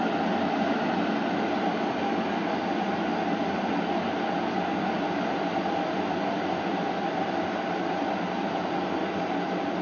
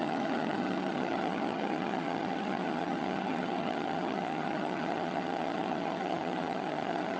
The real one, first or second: first